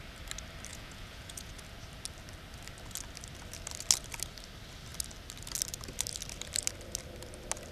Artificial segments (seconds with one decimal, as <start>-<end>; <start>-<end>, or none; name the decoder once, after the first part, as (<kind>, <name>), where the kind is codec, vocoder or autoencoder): 0.7-1.5 (vocoder, Vocos)